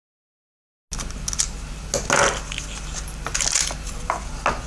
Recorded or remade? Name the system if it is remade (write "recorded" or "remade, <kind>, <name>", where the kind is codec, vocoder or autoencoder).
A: recorded